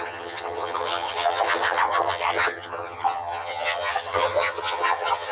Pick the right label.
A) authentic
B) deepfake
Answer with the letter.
B